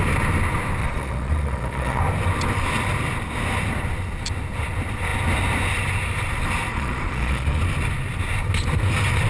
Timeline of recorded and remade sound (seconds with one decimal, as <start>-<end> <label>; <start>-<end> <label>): 0.0-0.8 recorded; 0.8-2.0 remade; 2.0-6.7 recorded; 6.7-7.6 remade; 7.6-9.3 recorded